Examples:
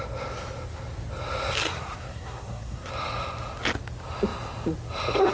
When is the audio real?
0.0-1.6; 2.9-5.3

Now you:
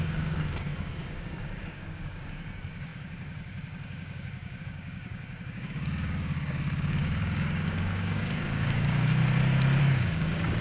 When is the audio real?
9.2-9.8

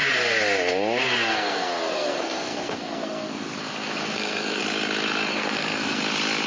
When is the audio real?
0.0-1.3; 4.6-5.3; 6.0-6.5